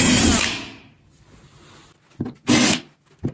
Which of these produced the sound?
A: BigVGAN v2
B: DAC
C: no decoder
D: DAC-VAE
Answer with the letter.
C